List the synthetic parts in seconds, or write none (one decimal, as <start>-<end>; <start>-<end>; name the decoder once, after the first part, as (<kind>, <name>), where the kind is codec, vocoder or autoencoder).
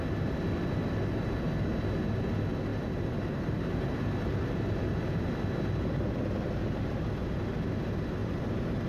2.7-4.8 (vocoder, BigVGAN v2); 8.2-8.9